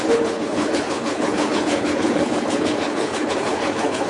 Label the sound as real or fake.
fake